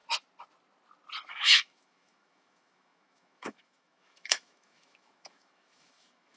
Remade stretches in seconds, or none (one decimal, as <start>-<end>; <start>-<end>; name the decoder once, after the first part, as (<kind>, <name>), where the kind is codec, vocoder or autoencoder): 1.3-6.4 (autoencoder, DAC-VAE)